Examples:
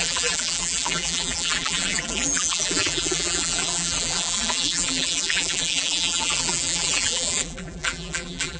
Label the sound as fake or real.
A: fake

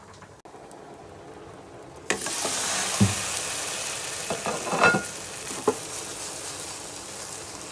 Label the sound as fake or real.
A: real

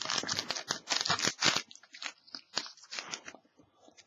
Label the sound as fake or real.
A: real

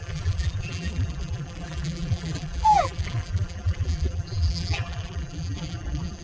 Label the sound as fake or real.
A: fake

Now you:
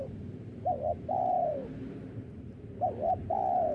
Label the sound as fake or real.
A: fake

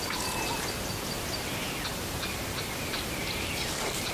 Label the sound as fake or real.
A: fake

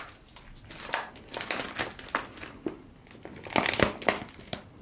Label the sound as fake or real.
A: real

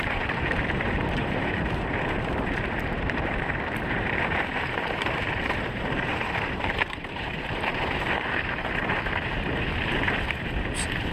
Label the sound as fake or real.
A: fake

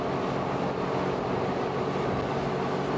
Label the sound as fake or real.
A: real